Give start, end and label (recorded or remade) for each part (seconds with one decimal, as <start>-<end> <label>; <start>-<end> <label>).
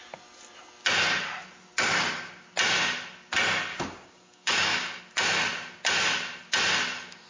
0.0-3.7 recorded; 3.7-5.0 remade; 5.0-7.3 recorded